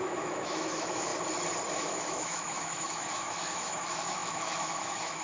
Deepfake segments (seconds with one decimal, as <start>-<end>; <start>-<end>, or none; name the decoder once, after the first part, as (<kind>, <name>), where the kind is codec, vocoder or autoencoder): 0.0-1.1 (autoencoder, DAC-VAE); 1.7-5.2